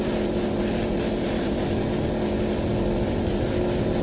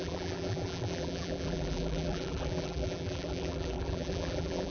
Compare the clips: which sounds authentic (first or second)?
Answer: first